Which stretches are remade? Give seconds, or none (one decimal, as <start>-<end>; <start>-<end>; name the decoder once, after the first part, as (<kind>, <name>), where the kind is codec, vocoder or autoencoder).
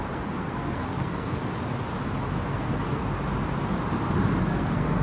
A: 0.0-1.4 (codec, SNAC); 2.5-3.0; 4.4-5.0